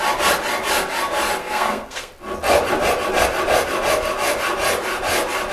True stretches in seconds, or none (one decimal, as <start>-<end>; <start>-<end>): 0.0-1.4; 2.1-5.5